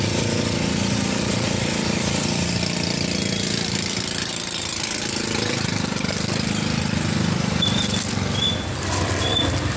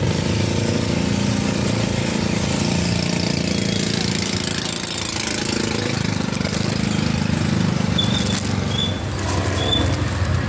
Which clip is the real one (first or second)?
second